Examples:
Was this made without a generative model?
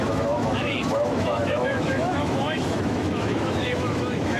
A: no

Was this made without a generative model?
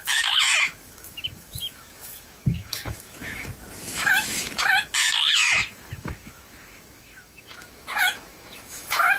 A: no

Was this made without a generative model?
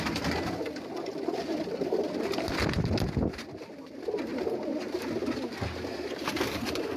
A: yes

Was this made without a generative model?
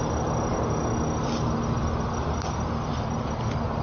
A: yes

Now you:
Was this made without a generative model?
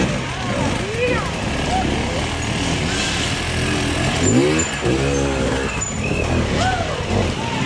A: yes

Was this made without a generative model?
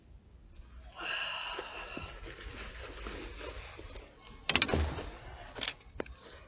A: yes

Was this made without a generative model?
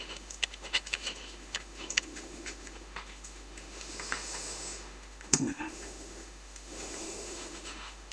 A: no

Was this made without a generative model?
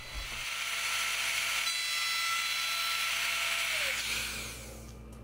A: yes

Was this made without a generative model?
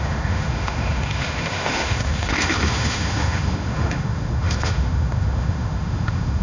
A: no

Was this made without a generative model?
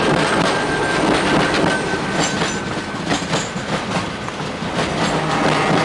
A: yes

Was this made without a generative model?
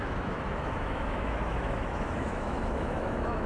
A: no